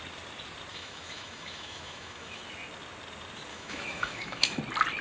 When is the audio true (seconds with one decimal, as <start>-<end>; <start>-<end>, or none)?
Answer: 0.0-0.7; 2.4-3.5; 4.6-5.0